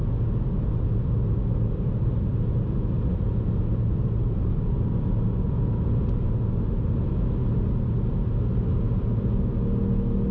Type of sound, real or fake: real